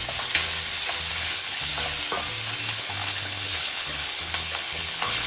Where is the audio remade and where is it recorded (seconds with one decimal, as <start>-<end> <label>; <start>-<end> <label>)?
0.0-1.1 recorded; 1.1-1.7 remade; 1.7-2.6 recorded; 2.6-5.3 remade